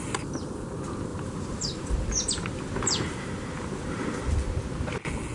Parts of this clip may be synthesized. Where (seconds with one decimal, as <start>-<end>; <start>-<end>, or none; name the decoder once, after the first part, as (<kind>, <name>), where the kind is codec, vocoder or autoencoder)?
1.1-4.3 (vocoder, BigVGAN v2)